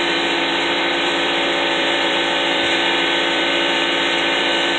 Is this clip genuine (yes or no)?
no